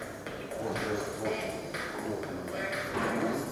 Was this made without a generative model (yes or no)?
yes